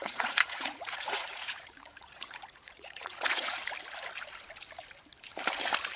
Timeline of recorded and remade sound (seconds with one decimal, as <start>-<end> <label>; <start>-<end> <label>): 0.0-3.6 remade; 3.6-6.0 recorded